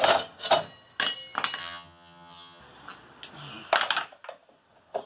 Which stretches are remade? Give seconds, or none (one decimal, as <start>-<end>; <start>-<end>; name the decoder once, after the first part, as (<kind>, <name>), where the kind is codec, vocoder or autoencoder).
1.6-2.6 (vocoder, HiFi-GAN)